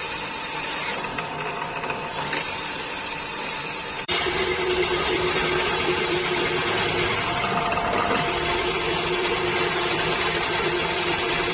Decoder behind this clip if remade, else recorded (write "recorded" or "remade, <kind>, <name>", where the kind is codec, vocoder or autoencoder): remade, vocoder, BigVGAN v2